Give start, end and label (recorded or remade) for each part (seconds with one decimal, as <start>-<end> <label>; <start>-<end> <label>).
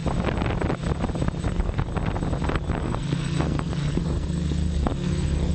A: 0.0-1.5 recorded; 1.5-1.9 remade; 1.9-2.8 recorded; 2.8-5.5 remade